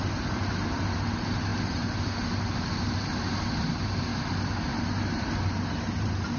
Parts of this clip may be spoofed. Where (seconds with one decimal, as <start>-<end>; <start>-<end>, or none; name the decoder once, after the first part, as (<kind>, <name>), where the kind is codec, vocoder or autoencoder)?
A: 0.0-1.5 (vocoder, BigVGAN v2); 2.7-4.1; 4.7-6.4